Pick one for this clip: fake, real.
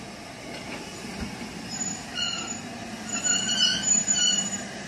real